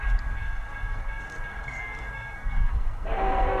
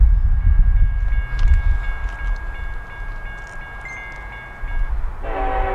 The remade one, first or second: first